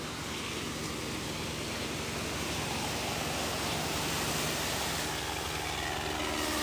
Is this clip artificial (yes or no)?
no